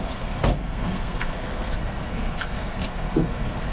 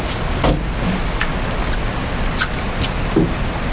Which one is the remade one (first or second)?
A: first